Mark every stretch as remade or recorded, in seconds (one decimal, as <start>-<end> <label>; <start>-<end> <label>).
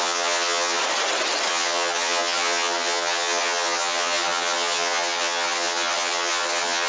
0.0-0.8 remade; 0.8-1.5 recorded; 1.5-6.9 remade